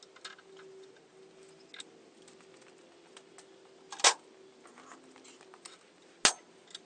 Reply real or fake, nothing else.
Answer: real